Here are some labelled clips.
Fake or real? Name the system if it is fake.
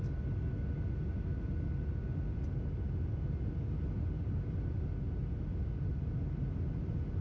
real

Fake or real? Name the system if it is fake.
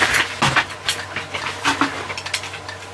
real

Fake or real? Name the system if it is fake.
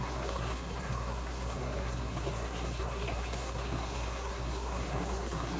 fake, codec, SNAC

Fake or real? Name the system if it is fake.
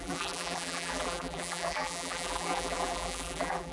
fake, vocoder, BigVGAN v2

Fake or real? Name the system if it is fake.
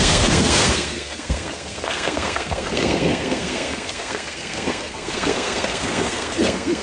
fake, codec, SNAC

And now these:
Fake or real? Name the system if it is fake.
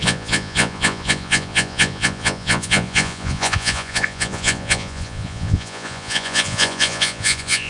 fake, vocoder, Vocos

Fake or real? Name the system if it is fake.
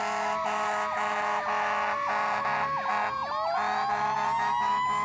real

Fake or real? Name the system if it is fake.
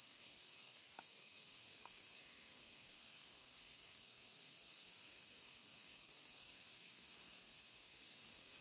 fake, codec, SNAC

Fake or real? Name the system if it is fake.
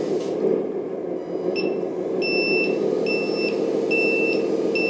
real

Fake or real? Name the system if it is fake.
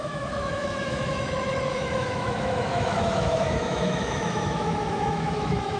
fake, autoencoder, DAC-VAE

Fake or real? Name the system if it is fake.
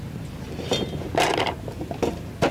real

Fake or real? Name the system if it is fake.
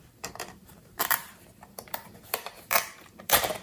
fake, vocoder, BigVGAN v2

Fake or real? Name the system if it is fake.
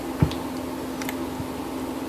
real